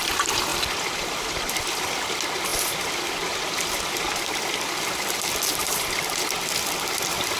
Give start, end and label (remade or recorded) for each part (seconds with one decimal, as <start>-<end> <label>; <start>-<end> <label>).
0.0-7.4 recorded

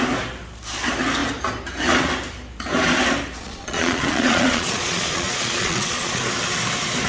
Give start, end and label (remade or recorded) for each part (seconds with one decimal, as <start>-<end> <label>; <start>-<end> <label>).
0.0-3.4 recorded; 3.4-6.2 remade; 6.2-7.1 recorded

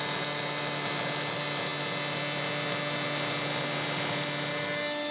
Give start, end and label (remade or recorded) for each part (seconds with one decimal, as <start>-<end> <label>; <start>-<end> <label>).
0.0-5.1 recorded

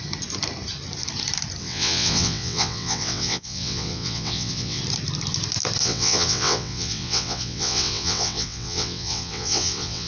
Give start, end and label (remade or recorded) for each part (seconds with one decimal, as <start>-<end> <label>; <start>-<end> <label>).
0.0-1.6 recorded; 1.6-4.8 remade; 4.8-5.8 recorded; 5.8-10.1 remade

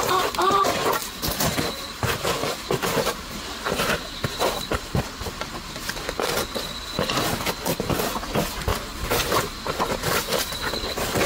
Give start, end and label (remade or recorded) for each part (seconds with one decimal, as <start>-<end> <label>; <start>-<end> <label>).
0.0-8.7 recorded; 8.7-10.0 remade; 10.0-11.3 recorded

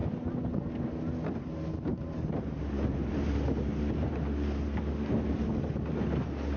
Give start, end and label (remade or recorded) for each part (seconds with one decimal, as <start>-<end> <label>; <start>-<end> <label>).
0.0-1.9 recorded; 1.9-4.1 remade; 4.1-6.6 recorded

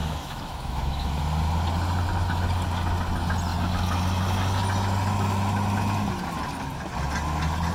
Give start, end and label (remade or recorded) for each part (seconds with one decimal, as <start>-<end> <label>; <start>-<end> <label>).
0.0-1.2 remade; 1.2-7.7 recorded